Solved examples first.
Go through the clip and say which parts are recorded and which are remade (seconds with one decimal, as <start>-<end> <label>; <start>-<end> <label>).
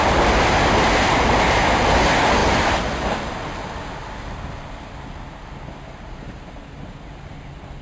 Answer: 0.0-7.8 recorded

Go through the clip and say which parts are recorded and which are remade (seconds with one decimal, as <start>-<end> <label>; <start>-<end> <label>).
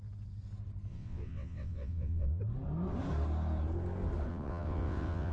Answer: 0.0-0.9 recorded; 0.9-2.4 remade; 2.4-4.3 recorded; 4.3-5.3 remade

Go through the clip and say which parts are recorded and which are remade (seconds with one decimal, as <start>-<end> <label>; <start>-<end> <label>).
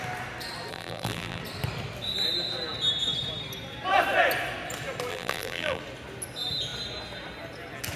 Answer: 0.0-0.7 recorded; 0.7-1.4 remade; 1.4-5.1 recorded; 5.1-5.8 remade; 5.8-8.0 recorded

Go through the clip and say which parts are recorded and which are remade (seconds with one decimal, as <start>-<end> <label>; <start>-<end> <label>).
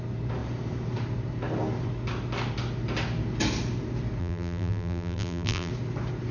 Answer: 0.0-4.2 recorded; 4.2-5.7 remade; 5.7-6.3 recorded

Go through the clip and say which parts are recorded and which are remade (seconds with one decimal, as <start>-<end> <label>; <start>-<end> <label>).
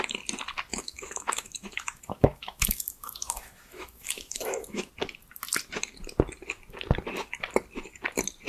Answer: 0.0-0.7 recorded; 0.7-4.9 remade; 4.9-8.5 recorded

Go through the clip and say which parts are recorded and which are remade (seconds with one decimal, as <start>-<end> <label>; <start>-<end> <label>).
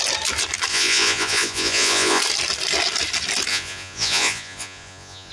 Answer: 0.0-0.7 recorded; 0.7-2.2 remade; 2.2-3.5 recorded; 3.5-5.3 remade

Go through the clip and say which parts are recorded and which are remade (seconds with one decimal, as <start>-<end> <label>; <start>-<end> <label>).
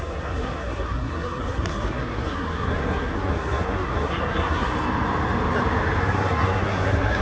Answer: 0.0-4.7 remade; 4.7-6.0 recorded; 6.0-7.2 remade